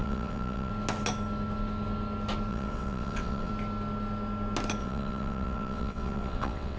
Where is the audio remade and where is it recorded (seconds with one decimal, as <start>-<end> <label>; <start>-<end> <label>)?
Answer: 0.0-0.7 remade; 0.7-2.5 recorded; 2.5-3.5 remade; 3.5-4.8 recorded; 4.8-6.8 remade